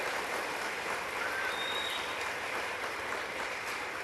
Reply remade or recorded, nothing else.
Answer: remade